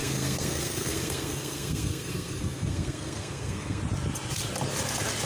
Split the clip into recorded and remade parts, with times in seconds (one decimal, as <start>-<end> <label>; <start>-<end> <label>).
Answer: 0.0-3.8 remade; 3.8-5.3 recorded